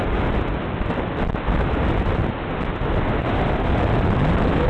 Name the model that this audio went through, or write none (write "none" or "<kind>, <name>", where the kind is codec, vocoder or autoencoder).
none